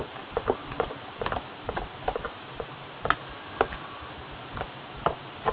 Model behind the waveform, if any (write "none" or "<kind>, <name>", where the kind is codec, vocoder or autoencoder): none